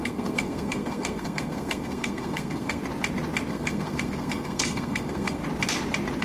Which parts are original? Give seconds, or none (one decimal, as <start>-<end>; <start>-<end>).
2.8-3.5; 5.4-6.2